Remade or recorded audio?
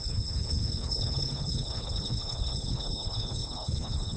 remade